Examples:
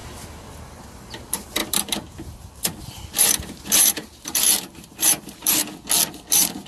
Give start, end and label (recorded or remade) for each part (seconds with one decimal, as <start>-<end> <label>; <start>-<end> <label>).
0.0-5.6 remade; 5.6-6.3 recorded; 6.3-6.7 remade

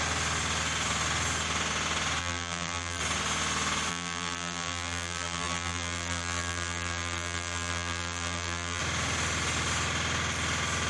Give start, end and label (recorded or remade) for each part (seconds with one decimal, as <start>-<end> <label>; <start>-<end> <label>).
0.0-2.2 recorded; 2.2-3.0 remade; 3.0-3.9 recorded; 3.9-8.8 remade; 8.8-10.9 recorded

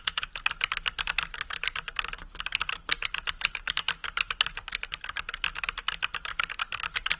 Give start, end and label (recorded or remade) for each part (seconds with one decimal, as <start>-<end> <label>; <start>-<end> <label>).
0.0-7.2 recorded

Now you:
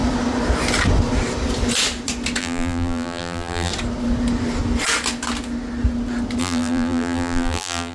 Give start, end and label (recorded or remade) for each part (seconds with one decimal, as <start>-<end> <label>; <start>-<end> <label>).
0.0-2.4 recorded; 2.4-3.7 remade; 3.7-6.4 recorded; 6.4-7.9 remade